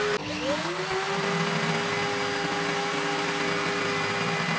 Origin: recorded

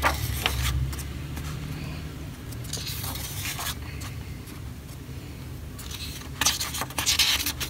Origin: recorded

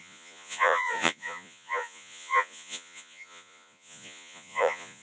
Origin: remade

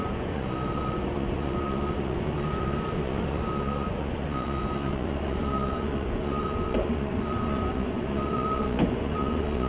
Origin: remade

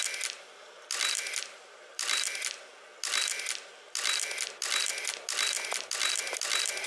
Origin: recorded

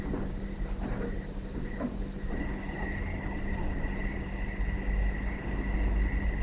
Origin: recorded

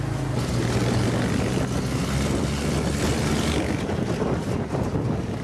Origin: recorded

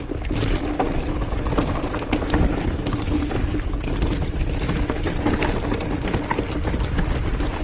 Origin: recorded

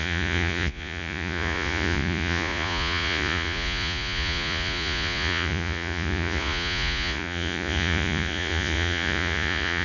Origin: remade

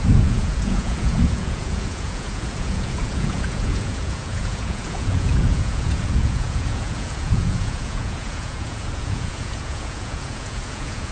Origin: remade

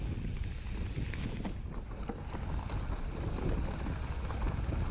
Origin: recorded